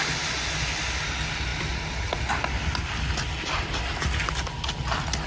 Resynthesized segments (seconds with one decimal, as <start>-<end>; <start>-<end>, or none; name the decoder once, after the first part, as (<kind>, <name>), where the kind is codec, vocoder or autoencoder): none